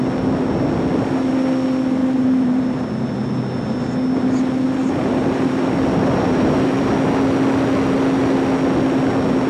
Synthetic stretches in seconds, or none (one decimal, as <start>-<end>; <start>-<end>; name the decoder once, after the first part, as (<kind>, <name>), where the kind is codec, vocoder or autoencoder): 2.0-2.6 (vocoder, BigVGAN v2); 4.8-6.9